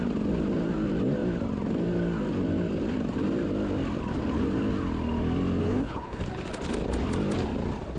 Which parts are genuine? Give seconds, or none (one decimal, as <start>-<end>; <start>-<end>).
0.0-5.6; 6.2-8.0